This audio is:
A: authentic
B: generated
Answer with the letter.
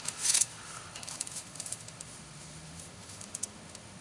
B